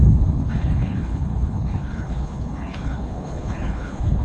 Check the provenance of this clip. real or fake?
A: fake